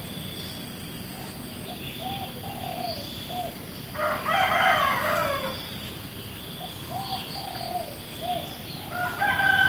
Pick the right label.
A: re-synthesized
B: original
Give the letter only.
B